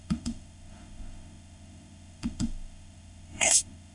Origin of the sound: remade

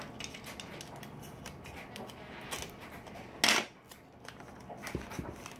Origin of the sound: recorded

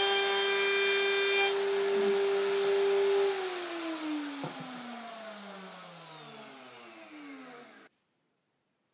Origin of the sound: recorded